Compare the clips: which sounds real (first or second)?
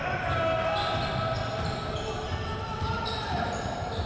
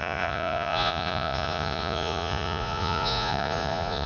first